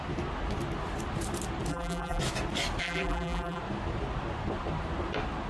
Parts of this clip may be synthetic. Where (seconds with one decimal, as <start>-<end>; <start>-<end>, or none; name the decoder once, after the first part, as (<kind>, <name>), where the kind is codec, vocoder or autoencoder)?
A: 1.7-2.2 (vocoder, BigVGAN v2); 2.8-3.6